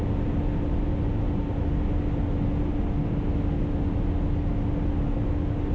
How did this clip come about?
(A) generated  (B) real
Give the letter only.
B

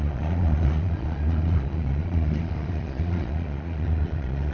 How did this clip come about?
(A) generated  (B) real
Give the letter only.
A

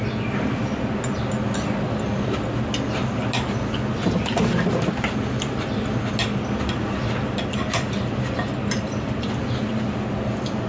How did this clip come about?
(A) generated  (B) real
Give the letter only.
B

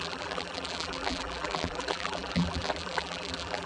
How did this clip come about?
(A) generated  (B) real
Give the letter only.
A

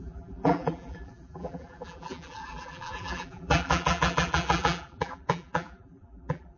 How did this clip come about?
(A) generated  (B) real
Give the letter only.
A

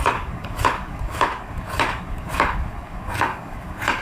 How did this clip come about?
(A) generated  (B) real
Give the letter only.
A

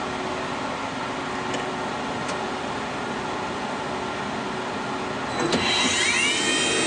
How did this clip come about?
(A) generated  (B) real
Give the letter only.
B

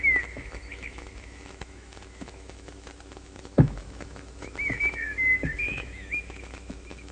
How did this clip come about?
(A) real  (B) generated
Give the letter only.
B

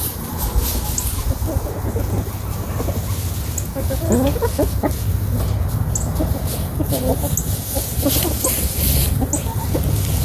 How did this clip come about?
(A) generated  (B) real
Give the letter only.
B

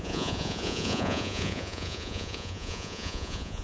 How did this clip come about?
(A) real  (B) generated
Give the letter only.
B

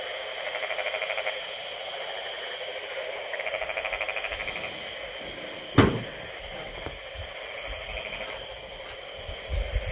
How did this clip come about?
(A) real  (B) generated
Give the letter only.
A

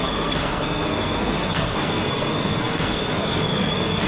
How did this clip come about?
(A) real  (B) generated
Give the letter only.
B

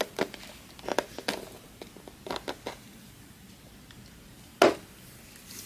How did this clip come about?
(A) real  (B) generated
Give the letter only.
A